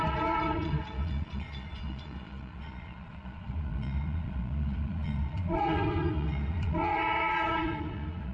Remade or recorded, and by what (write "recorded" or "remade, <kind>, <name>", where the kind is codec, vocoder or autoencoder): remade, vocoder, Vocos